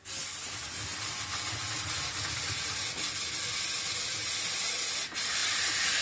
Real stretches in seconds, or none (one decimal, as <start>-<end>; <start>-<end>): 0.0-6.0